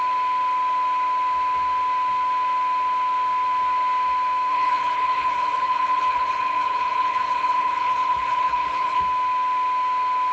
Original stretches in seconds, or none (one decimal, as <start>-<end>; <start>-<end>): 0.0-4.5; 9.0-10.3